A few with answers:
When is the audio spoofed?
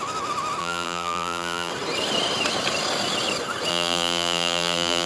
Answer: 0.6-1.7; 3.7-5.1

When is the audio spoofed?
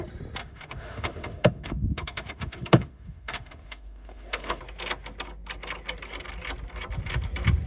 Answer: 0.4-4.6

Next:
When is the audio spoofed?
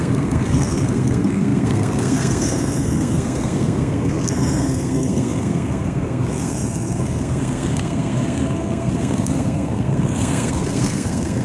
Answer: 0.0-11.4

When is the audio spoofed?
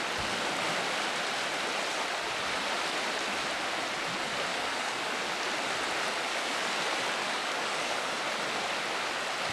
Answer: 4.5-5.2; 6.2-6.7; 7.2-8.2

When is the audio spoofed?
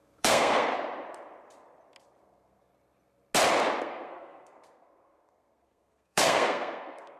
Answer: 0.0-0.7; 2.2-2.7; 3.8-7.2